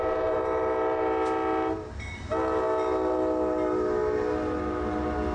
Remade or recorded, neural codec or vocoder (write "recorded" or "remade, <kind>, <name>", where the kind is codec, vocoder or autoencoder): recorded